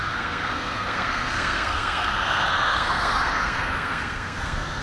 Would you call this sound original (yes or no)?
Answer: no